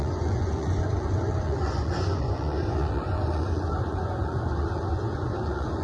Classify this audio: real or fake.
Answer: fake